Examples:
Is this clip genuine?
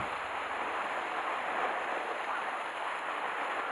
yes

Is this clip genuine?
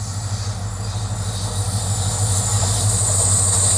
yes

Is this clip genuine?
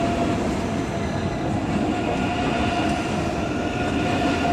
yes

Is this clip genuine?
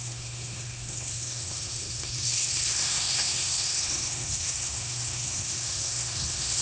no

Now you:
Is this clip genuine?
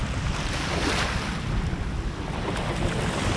yes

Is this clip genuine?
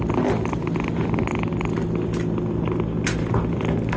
yes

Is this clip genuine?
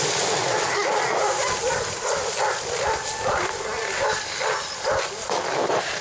yes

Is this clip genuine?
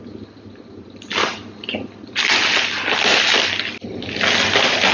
yes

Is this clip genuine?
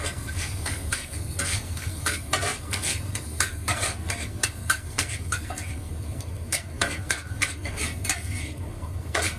no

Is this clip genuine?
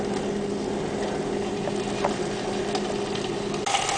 yes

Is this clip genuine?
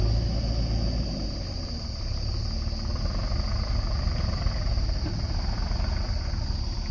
yes